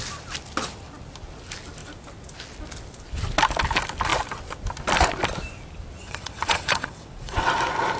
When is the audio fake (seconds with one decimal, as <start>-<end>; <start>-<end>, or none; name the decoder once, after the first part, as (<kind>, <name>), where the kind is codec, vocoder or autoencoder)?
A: 6.0-7.5 (vocoder, WaveNeXt)